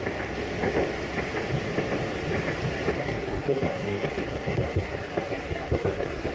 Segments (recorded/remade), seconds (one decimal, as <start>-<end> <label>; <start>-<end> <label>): 0.0-3.0 recorded; 3.0-6.3 remade